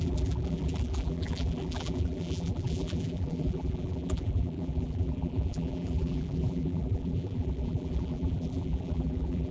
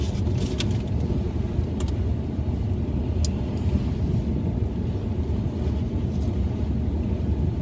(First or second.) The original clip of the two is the second